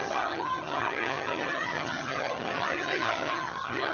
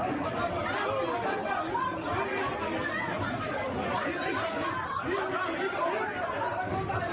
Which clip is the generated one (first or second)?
first